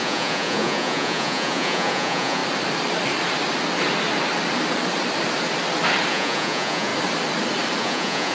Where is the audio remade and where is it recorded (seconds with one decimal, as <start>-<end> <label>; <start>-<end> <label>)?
0.0-2.4 remade; 2.4-6.1 recorded; 6.1-6.9 remade; 6.9-7.8 recorded; 7.8-8.3 remade